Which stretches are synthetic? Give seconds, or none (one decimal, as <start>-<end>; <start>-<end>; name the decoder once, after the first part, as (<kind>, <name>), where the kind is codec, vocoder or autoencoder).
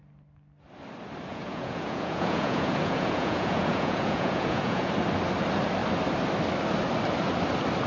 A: 1.3-4.9 (vocoder, Vocos)